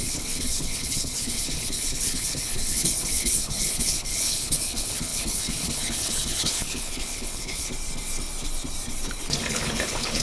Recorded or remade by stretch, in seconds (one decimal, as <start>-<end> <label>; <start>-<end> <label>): 0.0-7.7 remade; 7.7-9.5 recorded; 9.5-10.2 remade